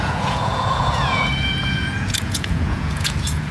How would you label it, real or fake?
fake